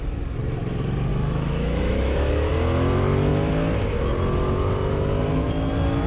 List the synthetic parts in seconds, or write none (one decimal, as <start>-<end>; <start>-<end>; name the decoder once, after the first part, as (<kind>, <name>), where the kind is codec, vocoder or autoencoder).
1.1-2.5 (autoencoder, DAC-VAE)